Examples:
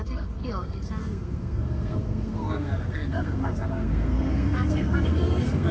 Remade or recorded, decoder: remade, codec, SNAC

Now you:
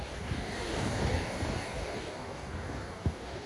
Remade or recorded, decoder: remade, codec, DAC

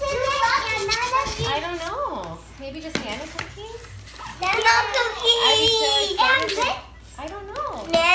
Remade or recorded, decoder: recorded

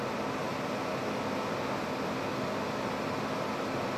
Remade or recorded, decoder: recorded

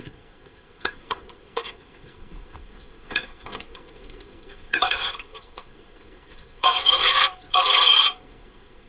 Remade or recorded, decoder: remade, codec, SNAC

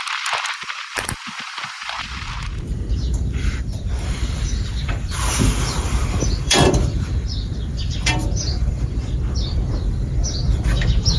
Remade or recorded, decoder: remade, vocoder, BigVGAN v2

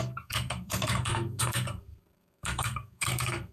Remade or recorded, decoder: remade, codec, SNAC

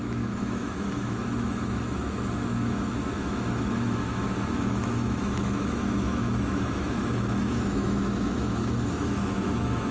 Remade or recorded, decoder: remade, autoencoder, DAC-VAE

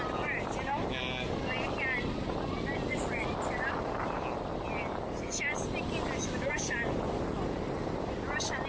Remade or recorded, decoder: recorded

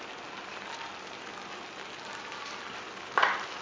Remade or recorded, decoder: recorded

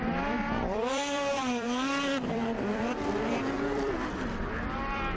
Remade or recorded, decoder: remade, vocoder, BigVGAN v2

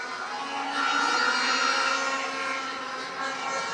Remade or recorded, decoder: recorded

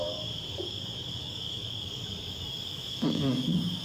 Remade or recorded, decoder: remade, codec, DAC